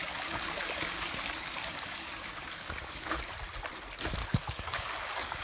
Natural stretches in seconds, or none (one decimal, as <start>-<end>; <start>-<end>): 3.2-4.2